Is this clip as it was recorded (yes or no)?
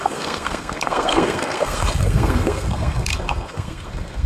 no